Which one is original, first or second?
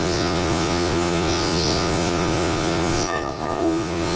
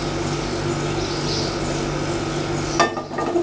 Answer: second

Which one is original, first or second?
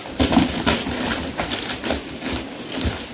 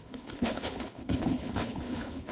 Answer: first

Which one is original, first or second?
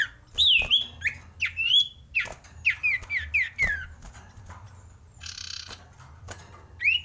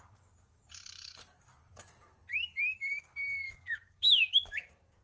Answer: first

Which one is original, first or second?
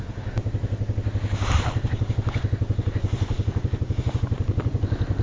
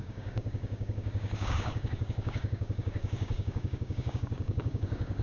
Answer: first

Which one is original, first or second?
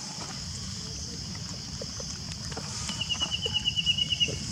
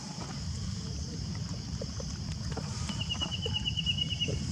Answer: first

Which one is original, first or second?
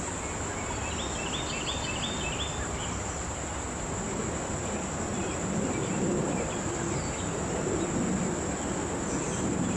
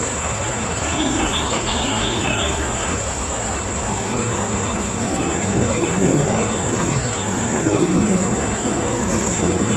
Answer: first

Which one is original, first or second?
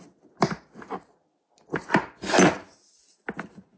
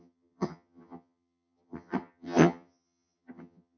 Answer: first